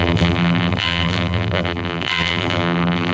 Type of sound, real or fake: fake